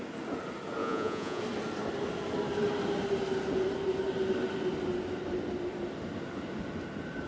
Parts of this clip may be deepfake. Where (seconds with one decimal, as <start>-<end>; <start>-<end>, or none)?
0.8-1.4

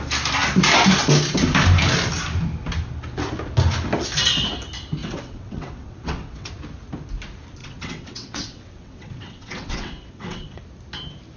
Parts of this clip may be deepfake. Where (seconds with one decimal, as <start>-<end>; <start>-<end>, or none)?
5.0-6.5; 7.6-10.6

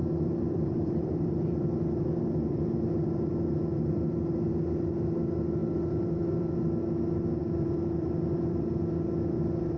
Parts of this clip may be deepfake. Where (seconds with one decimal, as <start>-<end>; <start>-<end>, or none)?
0.0-4.5; 5.6-6.8; 7.4-9.8

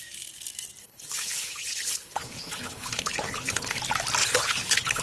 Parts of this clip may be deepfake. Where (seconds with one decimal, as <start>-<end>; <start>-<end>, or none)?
0.8-3.8; 4.2-5.0

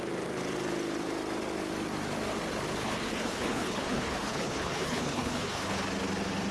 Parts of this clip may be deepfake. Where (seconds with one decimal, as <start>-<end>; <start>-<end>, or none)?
2.8-5.8

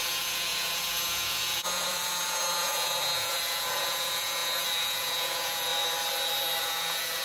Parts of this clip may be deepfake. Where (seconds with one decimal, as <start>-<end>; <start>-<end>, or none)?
0.0-5.7; 6.6-7.2